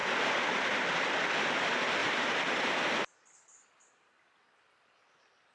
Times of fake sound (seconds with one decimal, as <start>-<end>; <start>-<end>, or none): 2.0-2.8